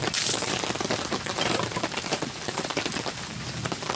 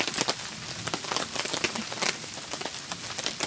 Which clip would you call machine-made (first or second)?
first